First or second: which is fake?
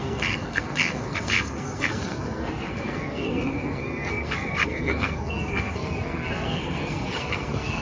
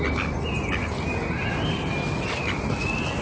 first